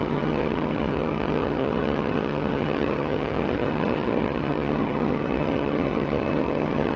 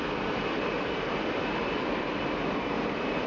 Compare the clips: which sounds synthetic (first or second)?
first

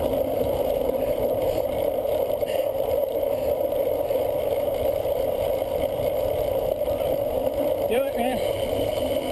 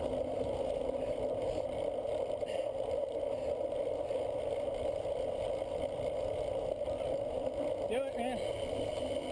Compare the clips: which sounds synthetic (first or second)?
first